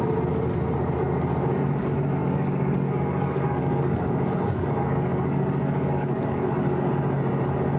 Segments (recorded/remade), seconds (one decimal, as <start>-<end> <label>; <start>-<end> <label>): 0.0-2.2 recorded; 2.2-6.9 remade; 6.9-7.8 recorded